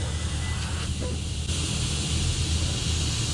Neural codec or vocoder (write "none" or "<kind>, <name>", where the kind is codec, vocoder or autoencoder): none